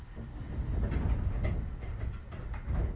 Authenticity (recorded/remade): recorded